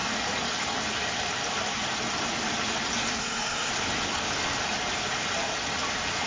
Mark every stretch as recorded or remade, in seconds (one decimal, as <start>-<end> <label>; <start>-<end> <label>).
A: 0.0-3.2 recorded; 3.2-3.7 remade; 3.7-6.3 recorded